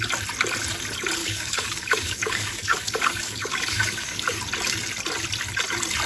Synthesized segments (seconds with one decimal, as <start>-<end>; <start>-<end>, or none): 1.2-4.4